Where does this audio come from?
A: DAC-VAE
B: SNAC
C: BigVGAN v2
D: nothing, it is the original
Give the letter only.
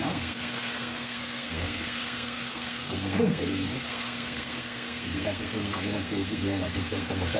B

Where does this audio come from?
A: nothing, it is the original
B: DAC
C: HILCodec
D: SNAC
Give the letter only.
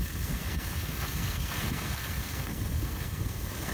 D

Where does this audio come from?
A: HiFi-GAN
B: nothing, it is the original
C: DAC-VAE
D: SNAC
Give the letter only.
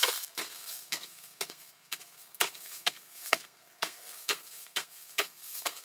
D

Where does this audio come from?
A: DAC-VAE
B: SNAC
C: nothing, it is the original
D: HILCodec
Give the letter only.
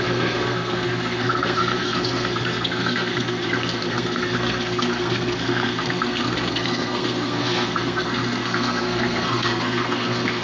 B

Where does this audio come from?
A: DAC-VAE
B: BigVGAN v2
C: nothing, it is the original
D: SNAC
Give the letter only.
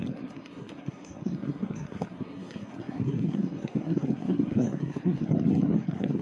D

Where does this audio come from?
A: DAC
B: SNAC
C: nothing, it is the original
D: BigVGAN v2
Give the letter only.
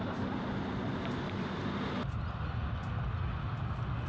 C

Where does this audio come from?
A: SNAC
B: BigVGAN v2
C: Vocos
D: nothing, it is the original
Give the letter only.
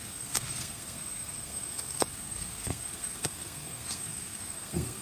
A